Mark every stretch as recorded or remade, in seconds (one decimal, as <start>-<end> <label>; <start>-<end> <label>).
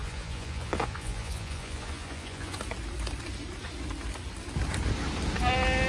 0.0-2.6 remade; 2.6-5.9 recorded